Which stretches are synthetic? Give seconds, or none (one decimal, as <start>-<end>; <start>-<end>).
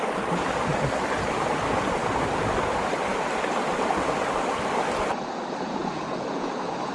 5.8-6.9